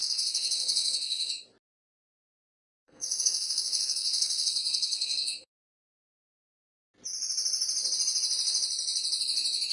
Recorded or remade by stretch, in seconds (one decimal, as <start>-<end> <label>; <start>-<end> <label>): 0.0-1.3 remade; 1.3-1.9 recorded; 1.9-5.5 remade; 5.5-9.7 recorded